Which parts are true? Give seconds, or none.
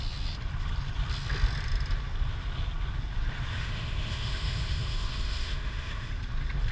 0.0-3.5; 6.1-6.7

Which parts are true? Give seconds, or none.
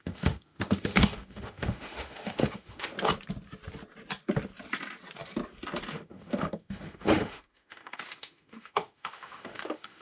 2.9-5.9